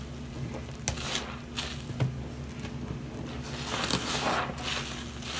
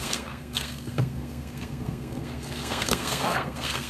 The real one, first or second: first